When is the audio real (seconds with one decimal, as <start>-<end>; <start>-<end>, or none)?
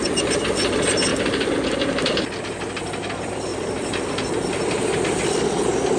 0.0-1.1; 2.4-3.5